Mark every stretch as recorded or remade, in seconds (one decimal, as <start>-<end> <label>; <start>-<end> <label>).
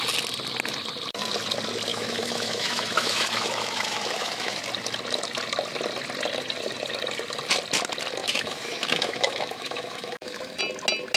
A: 0.0-1.9 recorded; 1.9-4.6 remade; 4.6-8.2 recorded; 8.2-10.6 remade; 10.6-11.2 recorded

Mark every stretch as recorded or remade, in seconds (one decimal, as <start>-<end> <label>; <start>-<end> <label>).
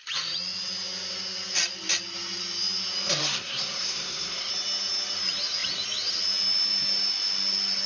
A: 0.0-3.2 recorded; 3.2-4.5 remade; 4.5-7.9 recorded